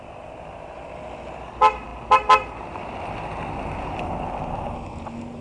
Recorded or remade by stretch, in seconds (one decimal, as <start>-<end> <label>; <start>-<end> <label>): 0.0-5.4 recorded